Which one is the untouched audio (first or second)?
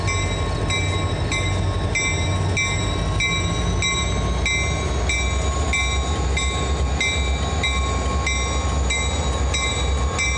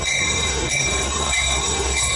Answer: first